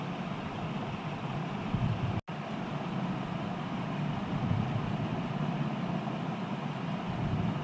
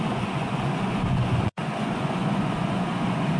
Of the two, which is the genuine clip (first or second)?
first